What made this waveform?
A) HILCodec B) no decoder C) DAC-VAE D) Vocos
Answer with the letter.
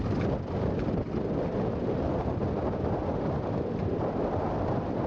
B